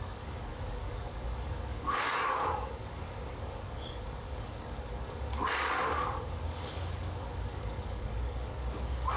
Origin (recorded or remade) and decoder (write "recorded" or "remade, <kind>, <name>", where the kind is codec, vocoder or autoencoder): remade, codec, DAC